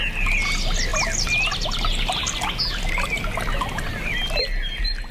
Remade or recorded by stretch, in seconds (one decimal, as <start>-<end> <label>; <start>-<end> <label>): 0.0-5.1 recorded